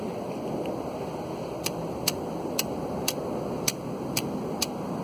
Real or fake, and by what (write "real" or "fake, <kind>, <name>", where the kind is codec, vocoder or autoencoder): real